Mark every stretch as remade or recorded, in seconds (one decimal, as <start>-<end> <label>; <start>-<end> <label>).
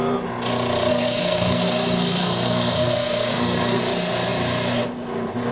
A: 0.0-0.9 recorded; 0.9-3.8 remade; 3.8-5.5 recorded